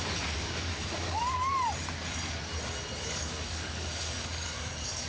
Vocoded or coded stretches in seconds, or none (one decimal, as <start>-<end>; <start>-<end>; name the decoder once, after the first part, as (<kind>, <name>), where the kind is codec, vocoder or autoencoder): 0.0-1.2 (codec, DAC); 3.0-5.1